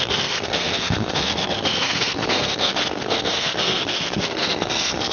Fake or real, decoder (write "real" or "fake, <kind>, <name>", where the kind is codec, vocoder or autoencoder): fake, codec, SNAC